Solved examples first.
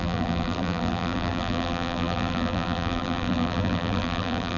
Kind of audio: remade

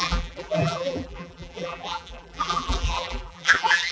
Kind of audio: remade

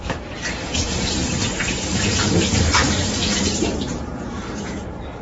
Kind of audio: remade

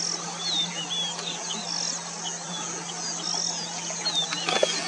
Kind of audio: recorded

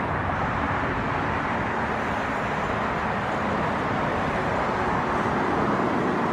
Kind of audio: recorded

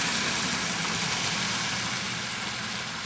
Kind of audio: recorded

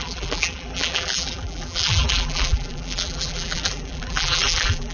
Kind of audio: remade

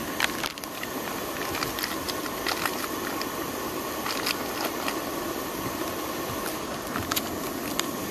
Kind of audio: recorded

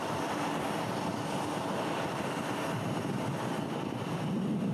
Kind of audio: remade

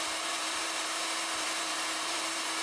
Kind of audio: remade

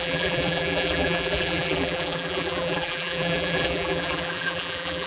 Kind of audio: remade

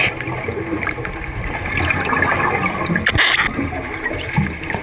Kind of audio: recorded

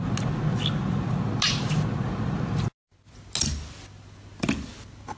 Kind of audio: recorded